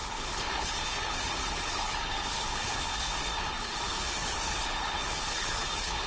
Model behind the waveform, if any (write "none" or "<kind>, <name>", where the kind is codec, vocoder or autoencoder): codec, HILCodec